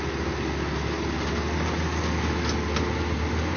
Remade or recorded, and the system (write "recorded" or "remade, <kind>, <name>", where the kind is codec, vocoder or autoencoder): recorded